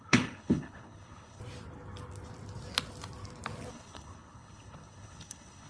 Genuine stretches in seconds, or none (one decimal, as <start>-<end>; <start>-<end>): 1.4-3.7